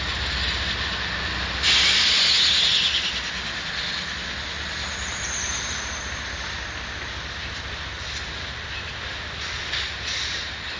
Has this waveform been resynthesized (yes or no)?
no